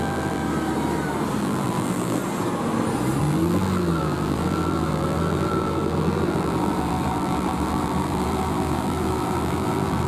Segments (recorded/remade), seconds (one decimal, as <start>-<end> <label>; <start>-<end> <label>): 0.0-0.4 remade; 0.4-1.4 recorded; 1.4-2.2 remade; 2.2-3.2 recorded; 3.2-10.1 remade